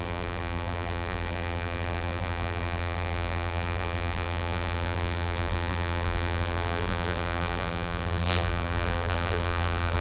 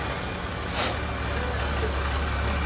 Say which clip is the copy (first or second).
first